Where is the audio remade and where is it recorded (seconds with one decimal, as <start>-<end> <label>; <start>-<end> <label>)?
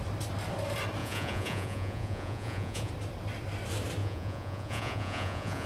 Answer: 0.0-1.0 recorded; 1.0-2.9 remade; 2.9-4.0 recorded; 4.0-5.7 remade